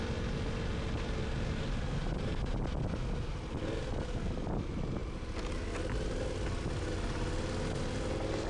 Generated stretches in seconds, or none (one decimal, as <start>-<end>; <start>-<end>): none